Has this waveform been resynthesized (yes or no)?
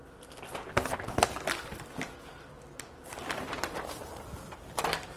no